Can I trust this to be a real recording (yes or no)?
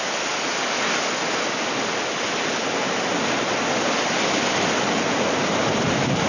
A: yes